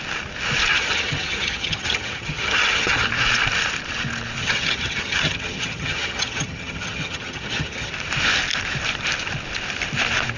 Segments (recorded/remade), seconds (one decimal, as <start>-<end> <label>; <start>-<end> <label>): 0.0-0.7 recorded; 0.7-3.1 remade; 3.1-4.4 recorded; 4.4-7.9 remade; 7.9-10.4 recorded